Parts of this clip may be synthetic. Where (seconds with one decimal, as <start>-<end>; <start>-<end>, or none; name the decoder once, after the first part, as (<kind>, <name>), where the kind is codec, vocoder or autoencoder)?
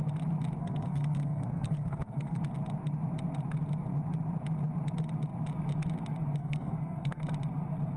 0.6-2.4 (codec, SNAC); 6.4-7.2